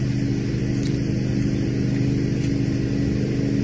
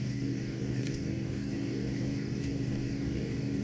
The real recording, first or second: first